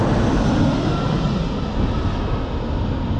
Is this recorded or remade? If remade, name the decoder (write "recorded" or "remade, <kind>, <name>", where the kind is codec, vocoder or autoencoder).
recorded